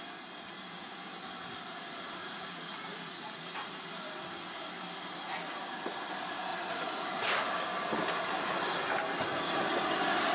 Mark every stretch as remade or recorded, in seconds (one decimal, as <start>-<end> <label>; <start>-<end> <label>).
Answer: 0.0-2.2 recorded; 2.2-3.8 remade; 3.8-6.5 recorded; 6.5-7.5 remade; 7.5-10.3 recorded